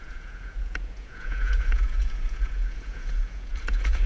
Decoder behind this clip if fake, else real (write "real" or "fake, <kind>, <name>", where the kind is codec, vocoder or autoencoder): fake, vocoder, Vocos